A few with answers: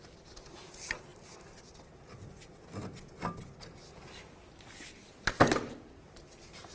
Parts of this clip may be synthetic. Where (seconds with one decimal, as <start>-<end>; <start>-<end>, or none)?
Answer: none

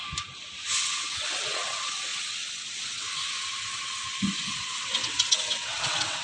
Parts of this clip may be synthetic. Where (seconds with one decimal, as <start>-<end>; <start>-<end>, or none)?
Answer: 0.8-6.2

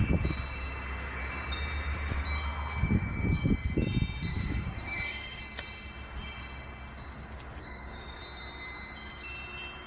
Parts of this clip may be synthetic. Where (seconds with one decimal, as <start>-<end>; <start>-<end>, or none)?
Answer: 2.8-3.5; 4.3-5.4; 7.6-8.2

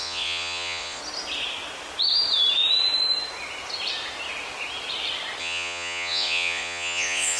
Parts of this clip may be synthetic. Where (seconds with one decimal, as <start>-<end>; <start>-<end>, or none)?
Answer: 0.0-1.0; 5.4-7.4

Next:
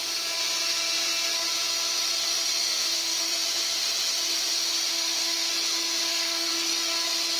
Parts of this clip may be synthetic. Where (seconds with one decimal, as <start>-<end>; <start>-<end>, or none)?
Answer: 2.6-3.2; 4.9-5.5; 6.0-6.5